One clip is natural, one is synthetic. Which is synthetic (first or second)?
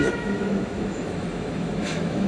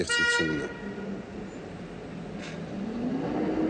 first